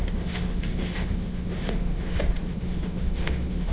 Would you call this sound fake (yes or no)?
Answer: yes